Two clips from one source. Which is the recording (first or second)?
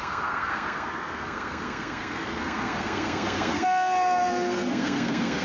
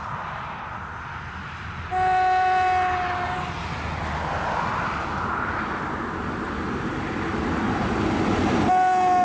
second